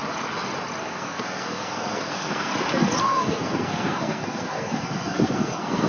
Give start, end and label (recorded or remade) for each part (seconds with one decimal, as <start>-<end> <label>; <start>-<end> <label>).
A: 0.0-0.8 recorded; 0.8-2.5 remade; 2.5-3.0 recorded; 3.0-5.9 remade